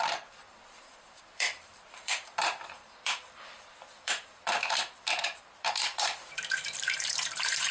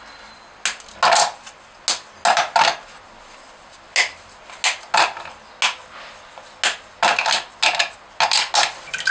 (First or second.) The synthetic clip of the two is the first